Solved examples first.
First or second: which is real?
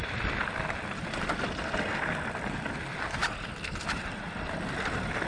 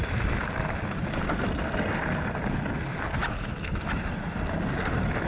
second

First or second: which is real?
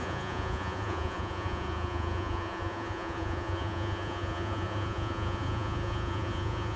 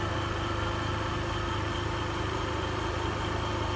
second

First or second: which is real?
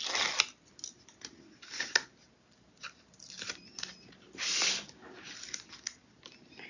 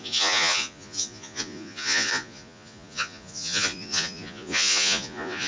first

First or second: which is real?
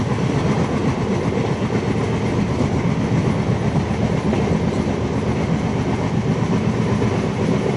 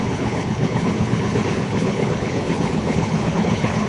first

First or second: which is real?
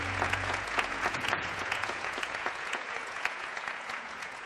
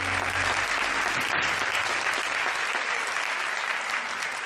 second